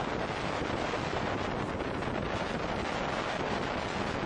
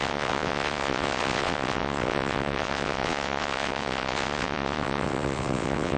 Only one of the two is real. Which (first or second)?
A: first